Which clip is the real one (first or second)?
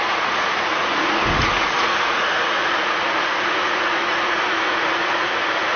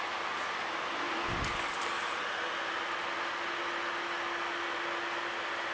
second